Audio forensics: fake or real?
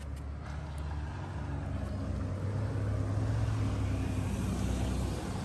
real